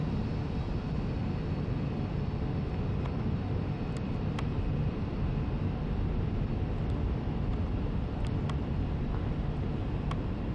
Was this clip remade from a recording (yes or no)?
no